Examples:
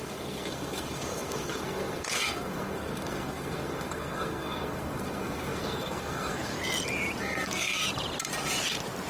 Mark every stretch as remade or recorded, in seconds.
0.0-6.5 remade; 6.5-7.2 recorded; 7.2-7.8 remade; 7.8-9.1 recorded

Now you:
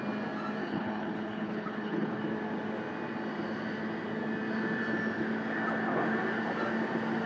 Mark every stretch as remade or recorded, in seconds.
0.0-0.6 recorded; 0.6-2.2 remade; 2.2-7.3 recorded

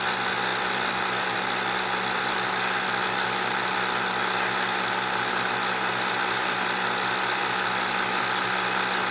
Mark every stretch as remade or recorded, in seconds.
0.0-9.1 recorded

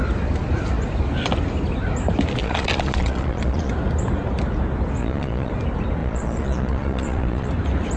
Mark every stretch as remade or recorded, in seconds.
0.0-2.4 recorded; 2.4-3.7 remade; 3.7-5.0 recorded; 5.0-5.5 remade; 5.5-6.0 recorded; 6.0-7.5 remade; 7.5-8.0 recorded